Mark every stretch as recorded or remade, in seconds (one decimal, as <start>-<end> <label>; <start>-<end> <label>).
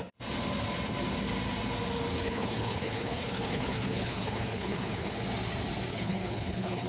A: 0.0-2.1 recorded; 2.1-5.1 remade; 5.1-5.9 recorded; 5.9-6.9 remade